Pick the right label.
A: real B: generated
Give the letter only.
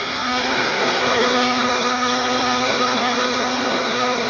B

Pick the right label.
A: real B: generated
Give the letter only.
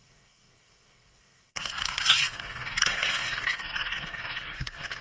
B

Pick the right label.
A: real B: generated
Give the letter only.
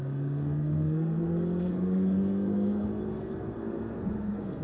B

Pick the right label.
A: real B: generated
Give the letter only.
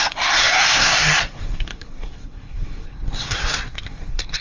B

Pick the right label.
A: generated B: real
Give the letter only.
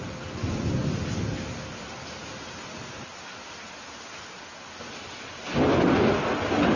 B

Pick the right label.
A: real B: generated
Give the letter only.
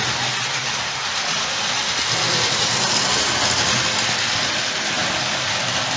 A